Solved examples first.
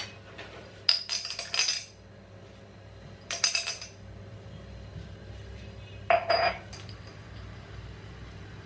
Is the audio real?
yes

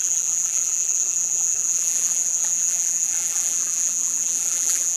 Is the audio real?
no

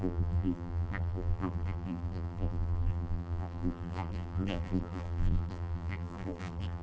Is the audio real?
no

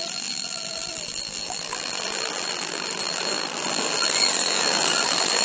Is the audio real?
no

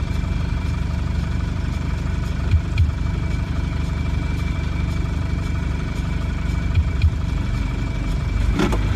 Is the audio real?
no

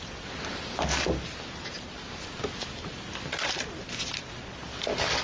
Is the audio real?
yes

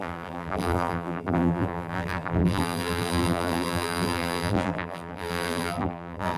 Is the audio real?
no